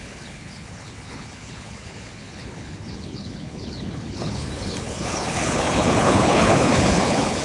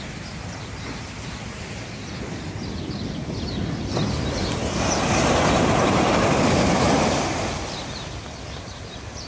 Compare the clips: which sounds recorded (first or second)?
second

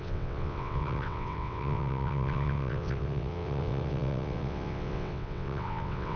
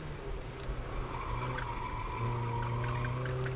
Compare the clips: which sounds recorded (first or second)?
second